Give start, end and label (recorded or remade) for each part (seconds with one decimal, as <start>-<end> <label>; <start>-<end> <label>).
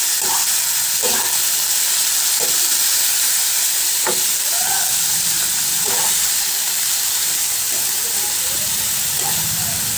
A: 0.0-2.9 recorded; 2.9-3.4 remade; 3.4-5.7 recorded; 5.7-9.3 remade; 9.3-10.0 recorded